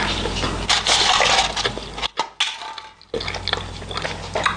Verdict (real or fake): real